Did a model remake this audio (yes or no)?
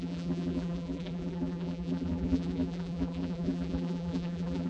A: yes